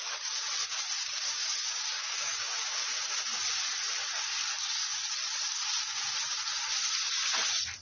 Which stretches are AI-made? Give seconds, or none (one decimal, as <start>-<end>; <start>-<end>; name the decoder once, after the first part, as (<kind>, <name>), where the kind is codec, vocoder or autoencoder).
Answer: 1.0-3.0 (codec, DAC)